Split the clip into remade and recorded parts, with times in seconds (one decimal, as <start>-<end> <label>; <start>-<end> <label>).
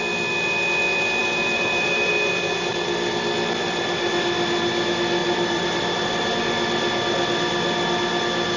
0.0-1.2 recorded; 1.2-2.1 remade; 2.1-5.2 recorded; 5.2-6.4 remade; 6.4-8.6 recorded